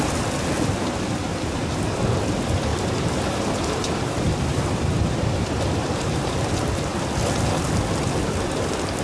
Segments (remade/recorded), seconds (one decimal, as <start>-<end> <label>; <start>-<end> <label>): 0.0-1.3 recorded; 1.3-2.0 remade; 2.0-2.7 recorded; 2.7-6.0 remade; 6.0-9.0 recorded